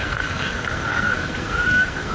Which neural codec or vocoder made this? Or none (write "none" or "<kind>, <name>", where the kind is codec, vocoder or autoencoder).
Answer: codec, SNAC